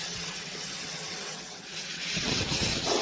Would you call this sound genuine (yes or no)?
no